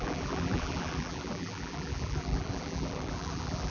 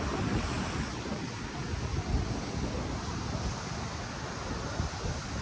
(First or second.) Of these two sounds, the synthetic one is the first